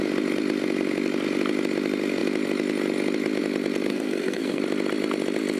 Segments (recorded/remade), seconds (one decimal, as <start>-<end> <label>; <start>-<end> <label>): 0.0-3.9 recorded; 3.9-4.6 remade; 4.6-5.6 recorded